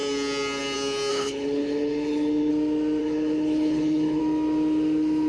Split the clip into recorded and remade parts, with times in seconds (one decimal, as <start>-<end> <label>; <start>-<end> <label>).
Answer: 0.0-1.1 recorded; 1.1-2.5 remade; 2.5-3.0 recorded; 3.0-4.2 remade; 4.2-5.3 recorded